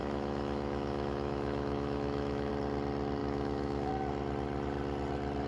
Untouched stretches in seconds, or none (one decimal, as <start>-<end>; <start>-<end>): 2.5-3.2; 3.9-5.5